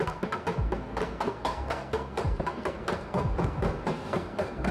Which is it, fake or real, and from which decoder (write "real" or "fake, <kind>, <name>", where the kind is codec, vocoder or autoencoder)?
fake, codec, SNAC